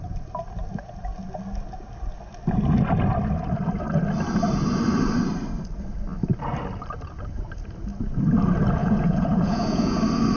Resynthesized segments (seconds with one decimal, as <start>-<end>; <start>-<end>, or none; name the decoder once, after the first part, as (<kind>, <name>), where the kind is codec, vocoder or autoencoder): 8.8-10.0 (vocoder, Vocos)